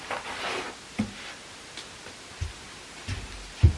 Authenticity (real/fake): real